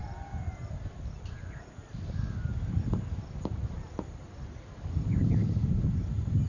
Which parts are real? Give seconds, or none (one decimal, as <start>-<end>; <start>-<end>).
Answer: 0.0-6.5